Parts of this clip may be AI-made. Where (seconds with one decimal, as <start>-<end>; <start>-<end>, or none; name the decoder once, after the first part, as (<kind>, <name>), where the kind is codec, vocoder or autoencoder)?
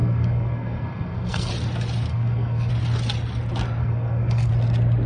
0.0-1.5 (codec, SNAC); 2.1-2.7; 3.8-4.5